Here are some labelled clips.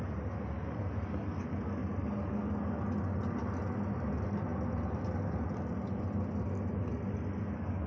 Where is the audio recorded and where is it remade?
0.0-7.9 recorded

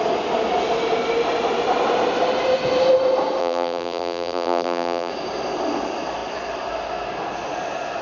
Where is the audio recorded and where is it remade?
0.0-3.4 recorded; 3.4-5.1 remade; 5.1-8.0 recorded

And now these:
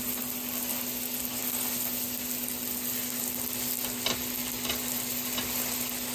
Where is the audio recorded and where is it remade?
0.0-6.1 recorded

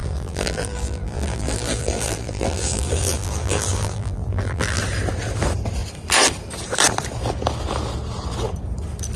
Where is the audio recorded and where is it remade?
0.0-4.8 remade; 4.8-9.2 recorded

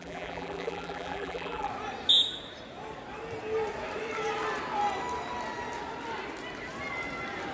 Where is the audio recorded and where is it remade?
0.0-1.7 remade; 1.7-7.5 recorded

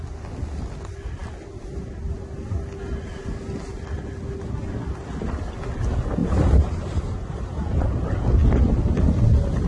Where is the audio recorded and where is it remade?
0.0-6.2 recorded; 6.2-7.9 remade; 7.9-9.7 recorded

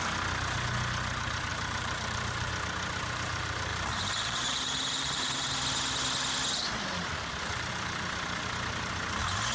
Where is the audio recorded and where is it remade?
0.0-1.5 recorded; 1.5-2.5 remade; 2.5-3.7 recorded; 3.7-5.6 remade; 5.6-7.1 recorded; 7.1-7.7 remade; 7.7-9.5 recorded